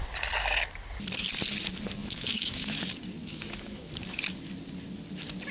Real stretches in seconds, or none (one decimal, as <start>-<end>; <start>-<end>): 0.0-2.0; 2.8-3.2; 3.9-5.5